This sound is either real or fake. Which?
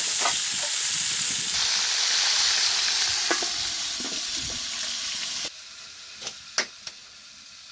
fake